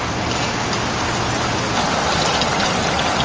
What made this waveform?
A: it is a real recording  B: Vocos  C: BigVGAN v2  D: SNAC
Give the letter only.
A